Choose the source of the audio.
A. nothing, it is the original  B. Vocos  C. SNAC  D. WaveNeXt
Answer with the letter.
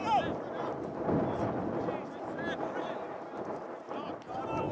A